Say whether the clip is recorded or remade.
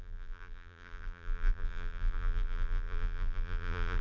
remade